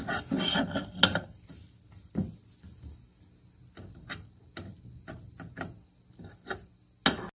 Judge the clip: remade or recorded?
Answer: recorded